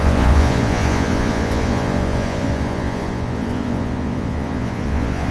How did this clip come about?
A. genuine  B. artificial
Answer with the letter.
B